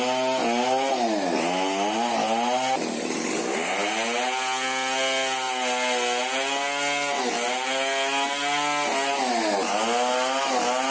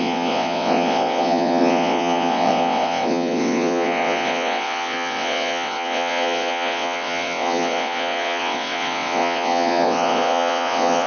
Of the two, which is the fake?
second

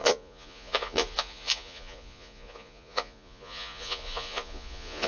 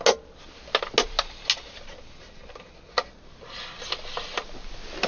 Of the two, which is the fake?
first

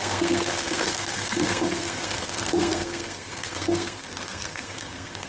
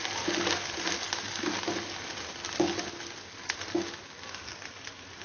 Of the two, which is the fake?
first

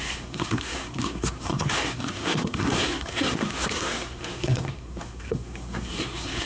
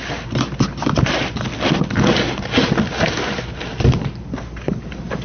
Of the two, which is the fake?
first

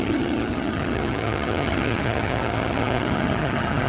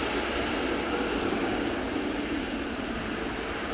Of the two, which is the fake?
first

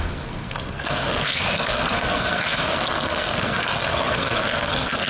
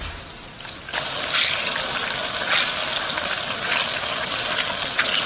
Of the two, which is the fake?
first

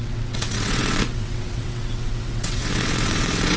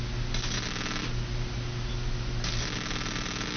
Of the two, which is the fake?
first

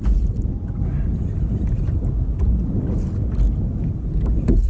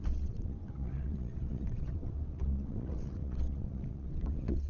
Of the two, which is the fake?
second